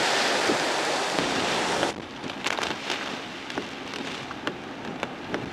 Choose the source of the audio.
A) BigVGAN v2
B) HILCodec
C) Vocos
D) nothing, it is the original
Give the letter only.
D